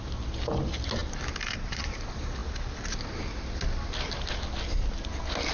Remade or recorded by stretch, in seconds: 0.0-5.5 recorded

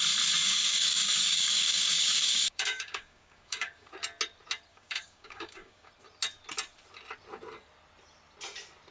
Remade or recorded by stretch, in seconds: 0.0-0.4 recorded; 0.4-3.9 remade; 3.9-4.7 recorded; 4.7-5.9 remade; 5.9-8.9 recorded